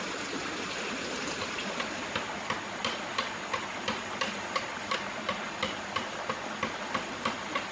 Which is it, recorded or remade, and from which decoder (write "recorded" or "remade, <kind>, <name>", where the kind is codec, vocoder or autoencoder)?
recorded